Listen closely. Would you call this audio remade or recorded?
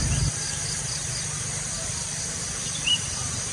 recorded